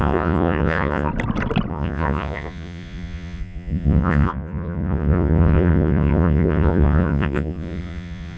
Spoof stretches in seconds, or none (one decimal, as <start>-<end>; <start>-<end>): 0.0-1.1; 1.7-8.4